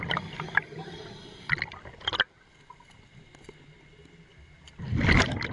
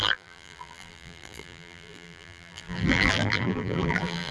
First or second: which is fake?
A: second